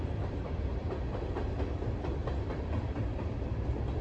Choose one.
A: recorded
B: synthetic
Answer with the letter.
B